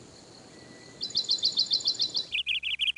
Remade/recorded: recorded